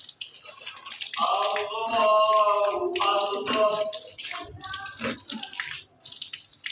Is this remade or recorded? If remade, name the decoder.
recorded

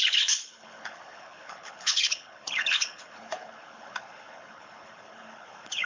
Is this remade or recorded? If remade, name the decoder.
remade, codec, HILCodec